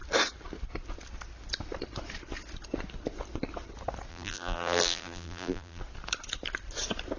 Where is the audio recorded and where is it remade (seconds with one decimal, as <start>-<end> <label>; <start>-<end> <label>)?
0.0-4.1 recorded; 4.1-5.8 remade; 5.8-7.2 recorded